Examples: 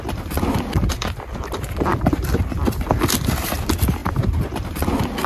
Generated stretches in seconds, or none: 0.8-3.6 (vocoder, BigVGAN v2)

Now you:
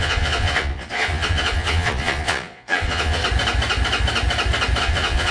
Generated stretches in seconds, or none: 0.0-3.2 (vocoder, Vocos); 4.8-5.3

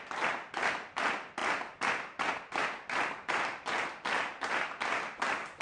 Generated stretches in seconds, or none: none

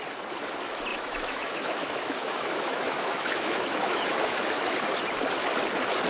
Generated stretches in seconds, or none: 0.9-4.6 (autoencoder, DAC-VAE)

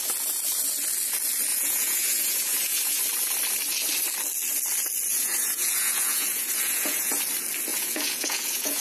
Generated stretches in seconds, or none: 1.5-3.0 (vocoder, Vocos); 5.1-7.2; 7.7-8.8

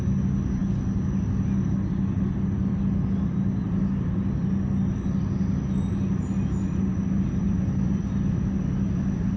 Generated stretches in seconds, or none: 6.9-8.1 (vocoder, BigVGAN v2)